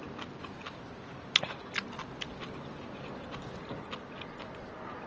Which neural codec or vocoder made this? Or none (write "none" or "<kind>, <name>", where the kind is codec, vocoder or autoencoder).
none